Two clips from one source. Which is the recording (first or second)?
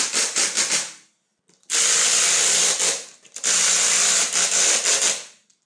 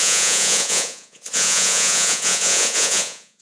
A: first